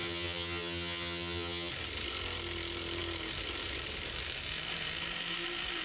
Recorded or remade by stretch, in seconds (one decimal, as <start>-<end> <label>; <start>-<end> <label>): 0.0-1.7 remade; 1.7-5.8 recorded